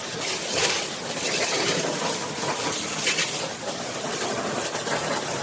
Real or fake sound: real